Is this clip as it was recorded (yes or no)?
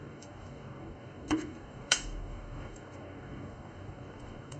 no